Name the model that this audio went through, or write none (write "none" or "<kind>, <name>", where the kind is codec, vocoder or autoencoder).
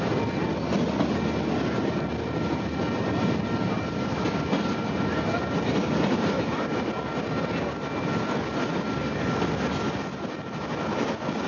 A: none